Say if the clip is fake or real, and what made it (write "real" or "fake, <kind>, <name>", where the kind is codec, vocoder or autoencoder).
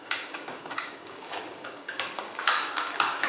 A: fake, codec, DAC